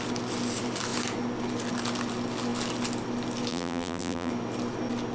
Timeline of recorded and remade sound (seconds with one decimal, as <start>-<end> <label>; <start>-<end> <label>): 0.0-3.5 recorded; 3.5-4.3 remade; 4.3-5.1 recorded